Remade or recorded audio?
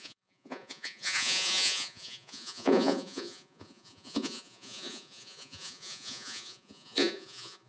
remade